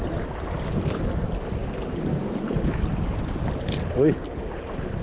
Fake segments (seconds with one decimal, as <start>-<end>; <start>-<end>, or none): none